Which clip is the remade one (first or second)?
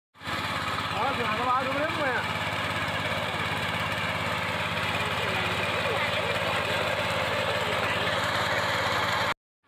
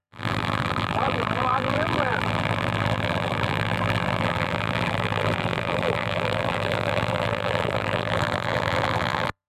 second